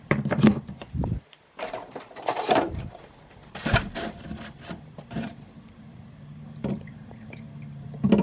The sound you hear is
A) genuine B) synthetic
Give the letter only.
B